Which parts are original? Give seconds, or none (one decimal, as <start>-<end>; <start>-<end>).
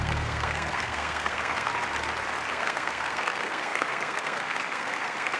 1.7-2.5